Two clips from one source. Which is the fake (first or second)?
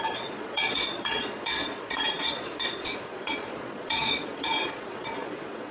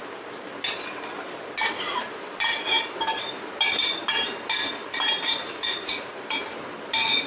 first